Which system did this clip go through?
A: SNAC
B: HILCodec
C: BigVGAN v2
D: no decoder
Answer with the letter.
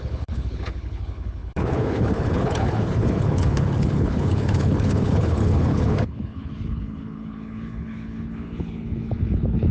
B